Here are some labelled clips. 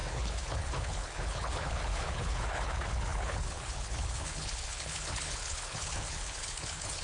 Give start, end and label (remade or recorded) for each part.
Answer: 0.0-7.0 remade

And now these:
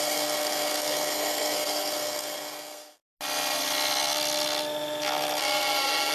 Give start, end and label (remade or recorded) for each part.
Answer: 0.0-3.0 remade; 3.0-5.4 recorded; 5.4-6.1 remade

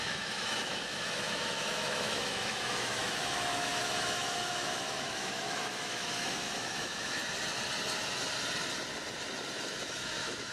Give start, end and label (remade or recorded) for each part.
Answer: 0.0-7.2 remade; 7.2-9.8 recorded; 9.8-10.5 remade